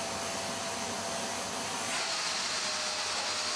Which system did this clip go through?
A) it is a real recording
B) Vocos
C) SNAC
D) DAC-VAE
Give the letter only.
A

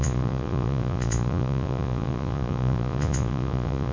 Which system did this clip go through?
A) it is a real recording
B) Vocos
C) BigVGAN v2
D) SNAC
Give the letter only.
B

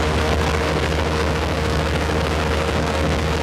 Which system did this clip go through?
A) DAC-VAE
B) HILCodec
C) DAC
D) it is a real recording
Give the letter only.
C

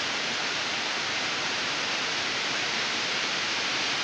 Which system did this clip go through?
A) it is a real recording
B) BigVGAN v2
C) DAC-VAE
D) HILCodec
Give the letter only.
B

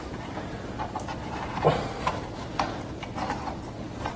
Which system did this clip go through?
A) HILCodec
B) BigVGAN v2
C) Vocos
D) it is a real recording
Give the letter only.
D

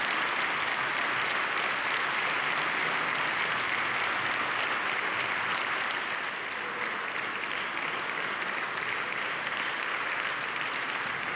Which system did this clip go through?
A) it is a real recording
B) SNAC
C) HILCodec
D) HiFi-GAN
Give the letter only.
A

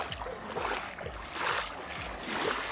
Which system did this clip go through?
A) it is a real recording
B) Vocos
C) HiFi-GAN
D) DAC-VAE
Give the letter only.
A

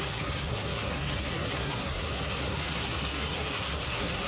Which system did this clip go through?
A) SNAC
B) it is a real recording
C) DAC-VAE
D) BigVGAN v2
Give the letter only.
A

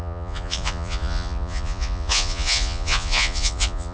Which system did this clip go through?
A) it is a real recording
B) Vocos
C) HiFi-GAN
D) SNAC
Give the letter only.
B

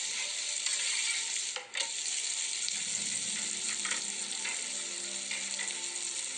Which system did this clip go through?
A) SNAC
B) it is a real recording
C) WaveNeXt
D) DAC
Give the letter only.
B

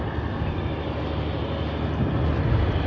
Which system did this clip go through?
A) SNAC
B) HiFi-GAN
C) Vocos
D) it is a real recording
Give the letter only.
D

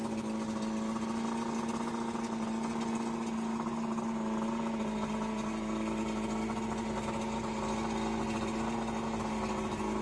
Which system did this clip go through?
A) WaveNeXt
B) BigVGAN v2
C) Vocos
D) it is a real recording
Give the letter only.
D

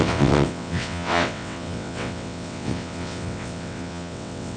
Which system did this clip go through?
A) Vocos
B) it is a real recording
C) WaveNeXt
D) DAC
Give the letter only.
C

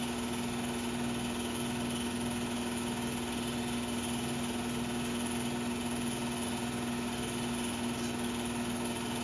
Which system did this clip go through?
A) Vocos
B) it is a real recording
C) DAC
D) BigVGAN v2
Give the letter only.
B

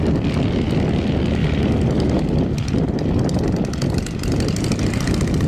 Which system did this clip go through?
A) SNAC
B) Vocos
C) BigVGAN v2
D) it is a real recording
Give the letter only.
D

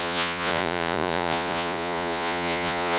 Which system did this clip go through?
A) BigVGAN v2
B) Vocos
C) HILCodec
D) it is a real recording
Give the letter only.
B